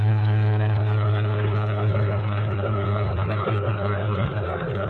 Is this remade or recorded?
remade